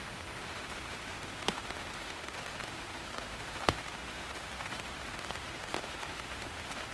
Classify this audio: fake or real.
fake